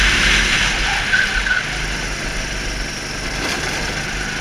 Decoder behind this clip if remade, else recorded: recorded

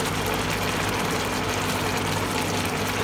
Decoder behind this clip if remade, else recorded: recorded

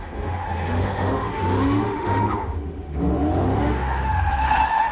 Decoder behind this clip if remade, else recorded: remade, autoencoder, DAC-VAE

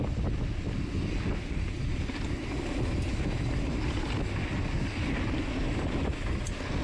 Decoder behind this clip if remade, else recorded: recorded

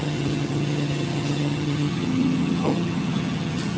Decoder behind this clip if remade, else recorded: remade, vocoder, HiFi-GAN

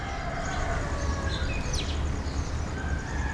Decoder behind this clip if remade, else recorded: recorded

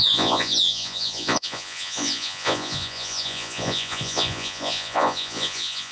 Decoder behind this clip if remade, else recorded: remade, vocoder, Vocos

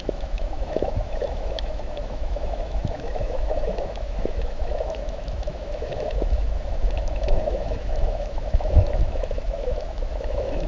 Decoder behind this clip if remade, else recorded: remade, autoencoder, DAC-VAE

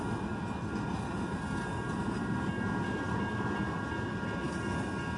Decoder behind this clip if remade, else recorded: recorded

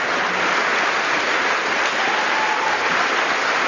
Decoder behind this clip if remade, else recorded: recorded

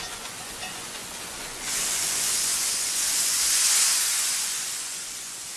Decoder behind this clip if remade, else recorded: remade, vocoder, Vocos